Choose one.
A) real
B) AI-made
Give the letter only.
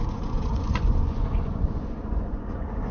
B